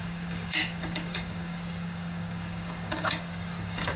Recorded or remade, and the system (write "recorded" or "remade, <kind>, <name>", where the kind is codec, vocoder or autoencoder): remade, codec, DAC